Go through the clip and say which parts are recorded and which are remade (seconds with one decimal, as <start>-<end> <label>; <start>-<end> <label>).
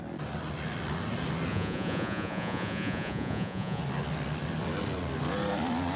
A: 0.0-1.5 recorded; 1.5-3.8 remade; 3.8-6.0 recorded